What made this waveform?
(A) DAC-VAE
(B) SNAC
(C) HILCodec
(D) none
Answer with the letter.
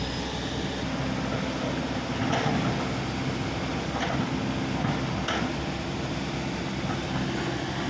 D